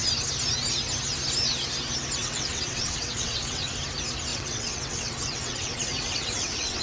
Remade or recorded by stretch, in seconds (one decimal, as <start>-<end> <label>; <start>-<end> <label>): 0.0-2.2 recorded; 2.2-3.7 remade; 3.7-4.3 recorded; 4.3-6.8 remade